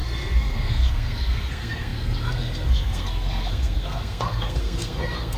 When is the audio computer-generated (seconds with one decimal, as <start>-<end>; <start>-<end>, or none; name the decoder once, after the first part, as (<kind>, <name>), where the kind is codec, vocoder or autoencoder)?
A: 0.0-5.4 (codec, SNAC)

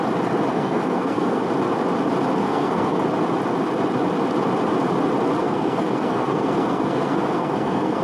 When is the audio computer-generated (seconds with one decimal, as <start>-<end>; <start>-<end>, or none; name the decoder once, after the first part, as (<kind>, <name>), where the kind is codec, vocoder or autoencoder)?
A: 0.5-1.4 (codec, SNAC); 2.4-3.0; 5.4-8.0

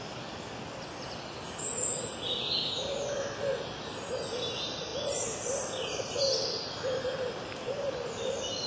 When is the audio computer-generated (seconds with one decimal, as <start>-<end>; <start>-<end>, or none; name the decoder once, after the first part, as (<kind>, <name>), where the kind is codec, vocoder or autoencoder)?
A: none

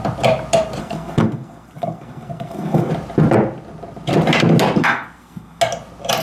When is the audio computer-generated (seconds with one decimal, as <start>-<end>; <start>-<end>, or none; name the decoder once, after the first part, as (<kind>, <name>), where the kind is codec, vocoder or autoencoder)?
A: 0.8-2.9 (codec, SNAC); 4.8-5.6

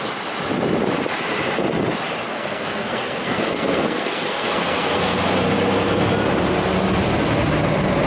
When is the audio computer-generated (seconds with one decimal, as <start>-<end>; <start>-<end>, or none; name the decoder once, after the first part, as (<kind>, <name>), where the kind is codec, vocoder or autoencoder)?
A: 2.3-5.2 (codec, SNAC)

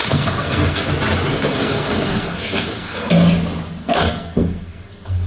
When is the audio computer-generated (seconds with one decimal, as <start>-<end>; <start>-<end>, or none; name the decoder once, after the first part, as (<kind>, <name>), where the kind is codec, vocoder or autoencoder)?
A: 0.0-0.9 (codec, SNAC); 1.3-3.1; 3.8-5.3

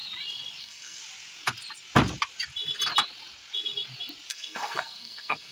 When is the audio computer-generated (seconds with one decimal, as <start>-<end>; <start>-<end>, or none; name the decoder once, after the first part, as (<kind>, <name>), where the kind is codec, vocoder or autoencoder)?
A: 0.6-1.0 (codec, SNAC); 4.3-5.5